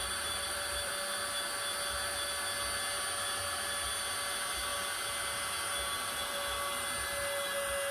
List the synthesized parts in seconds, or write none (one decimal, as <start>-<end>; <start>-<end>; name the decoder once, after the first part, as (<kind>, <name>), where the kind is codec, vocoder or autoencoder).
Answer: 0.0-0.9 (vocoder, BigVGAN v2)